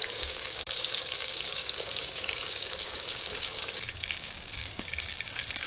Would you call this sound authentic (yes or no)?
no